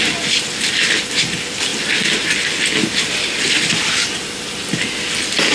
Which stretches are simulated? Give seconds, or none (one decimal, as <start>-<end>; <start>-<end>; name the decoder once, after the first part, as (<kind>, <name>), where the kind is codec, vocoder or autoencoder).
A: none